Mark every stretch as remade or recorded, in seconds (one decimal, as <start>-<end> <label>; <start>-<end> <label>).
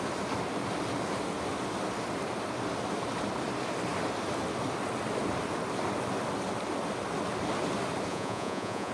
0.0-8.1 recorded; 8.1-8.9 remade